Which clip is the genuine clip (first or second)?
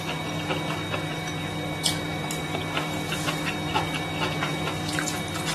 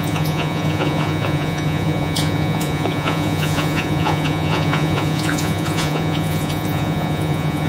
first